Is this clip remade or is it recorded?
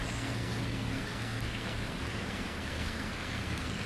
remade